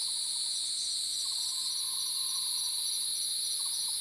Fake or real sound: real